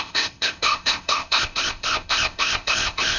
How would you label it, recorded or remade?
remade